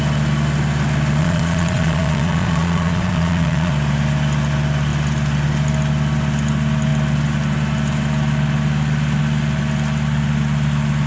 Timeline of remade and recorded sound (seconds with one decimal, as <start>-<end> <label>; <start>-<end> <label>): 0.0-1.2 recorded; 1.2-3.7 remade; 3.7-11.1 recorded